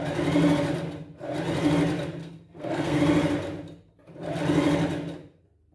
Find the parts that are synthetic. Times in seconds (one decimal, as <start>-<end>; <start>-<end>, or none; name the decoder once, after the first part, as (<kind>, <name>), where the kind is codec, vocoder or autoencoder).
2.2-3.0 (codec, SNAC)